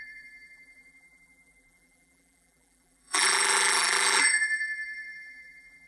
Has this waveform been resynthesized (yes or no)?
yes